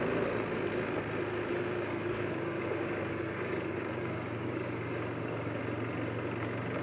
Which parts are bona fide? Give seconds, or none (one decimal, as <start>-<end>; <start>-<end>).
0.0-1.5; 5.6-6.8